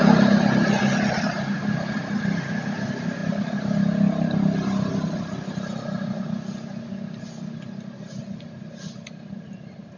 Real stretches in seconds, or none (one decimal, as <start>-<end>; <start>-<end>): 0.0-10.0